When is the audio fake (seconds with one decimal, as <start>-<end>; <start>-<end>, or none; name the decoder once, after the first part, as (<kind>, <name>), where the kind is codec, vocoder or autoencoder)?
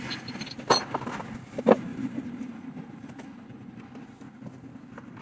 1.9-3.8 (vocoder, BigVGAN v2)